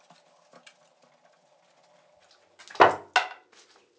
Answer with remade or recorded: recorded